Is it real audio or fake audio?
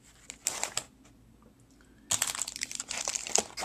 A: real